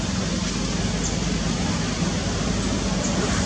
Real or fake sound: real